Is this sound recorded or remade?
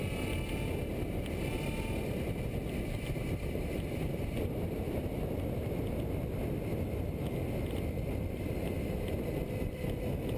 recorded